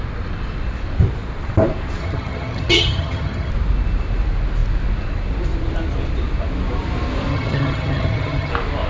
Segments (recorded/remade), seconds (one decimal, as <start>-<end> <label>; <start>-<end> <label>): 0.0-2.0 recorded; 2.0-3.5 remade; 3.5-7.3 recorded; 7.3-8.5 remade; 8.5-8.9 recorded